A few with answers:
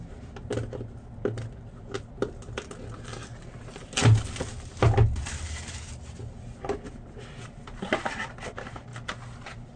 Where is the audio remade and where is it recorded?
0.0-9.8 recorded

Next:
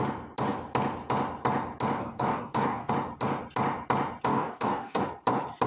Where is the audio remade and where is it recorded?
0.0-2.0 recorded; 2.0-2.9 remade; 2.9-4.3 recorded; 4.3-5.0 remade; 5.0-5.7 recorded

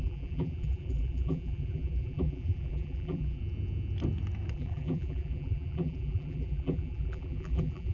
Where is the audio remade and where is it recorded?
0.0-3.4 remade; 3.4-4.5 recorded; 4.5-7.9 remade

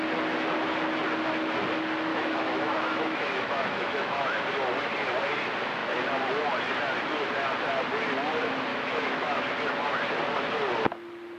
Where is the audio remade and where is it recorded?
0.0-2.1 recorded; 2.1-4.4 remade; 4.4-8.7 recorded; 8.7-9.4 remade; 9.4-11.4 recorded

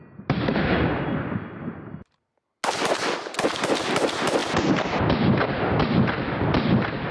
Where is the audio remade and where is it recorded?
0.0-7.1 recorded